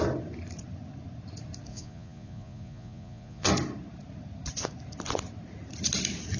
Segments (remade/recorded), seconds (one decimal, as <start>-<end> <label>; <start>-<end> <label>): 0.0-1.7 recorded; 1.7-3.5 remade; 3.5-6.4 recorded